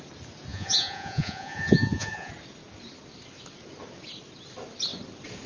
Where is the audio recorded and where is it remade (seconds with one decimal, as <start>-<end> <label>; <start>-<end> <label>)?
0.0-0.5 recorded; 0.5-2.3 remade; 2.3-5.5 recorded